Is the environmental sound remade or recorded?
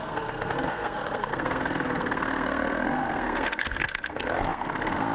remade